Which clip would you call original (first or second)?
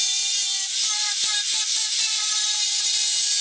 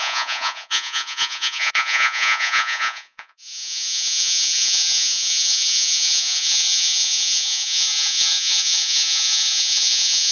first